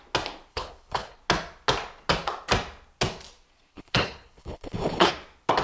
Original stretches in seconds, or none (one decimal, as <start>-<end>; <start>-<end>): 0.0-0.5; 1.2-3.7; 5.1-5.6